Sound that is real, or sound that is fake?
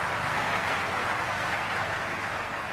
fake